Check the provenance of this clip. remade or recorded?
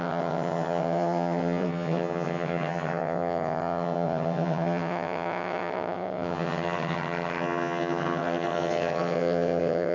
remade